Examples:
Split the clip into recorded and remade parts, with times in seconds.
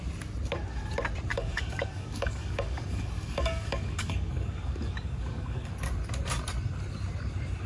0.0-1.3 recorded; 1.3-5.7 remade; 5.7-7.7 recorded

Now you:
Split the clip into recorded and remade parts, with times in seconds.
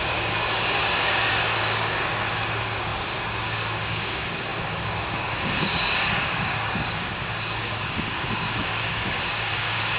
0.0-10.0 remade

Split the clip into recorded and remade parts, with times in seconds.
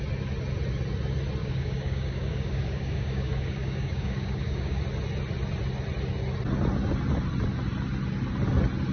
0.0-1.4 recorded; 1.4-4.8 remade; 4.8-8.9 recorded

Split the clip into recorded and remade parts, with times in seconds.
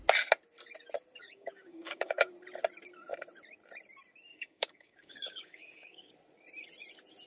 0.0-1.2 recorded; 1.2-2.3 remade; 2.3-4.3 recorded; 4.3-6.1 remade; 6.1-7.3 recorded